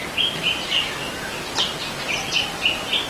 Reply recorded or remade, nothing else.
recorded